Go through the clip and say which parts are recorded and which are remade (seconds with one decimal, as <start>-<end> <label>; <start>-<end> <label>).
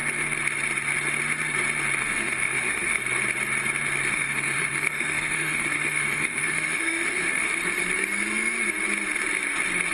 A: 0.0-2.0 recorded; 2.0-3.0 remade; 3.0-4.1 recorded; 4.1-7.5 remade; 7.5-9.9 recorded